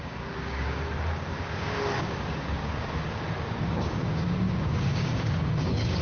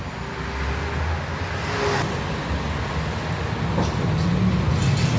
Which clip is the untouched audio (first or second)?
second